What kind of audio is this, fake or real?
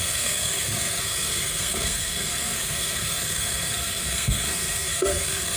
fake